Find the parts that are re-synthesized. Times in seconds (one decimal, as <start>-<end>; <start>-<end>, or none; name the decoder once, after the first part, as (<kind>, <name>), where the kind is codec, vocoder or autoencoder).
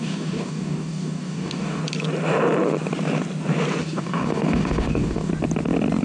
0.0-1.8 (codec, DAC); 3.8-5.3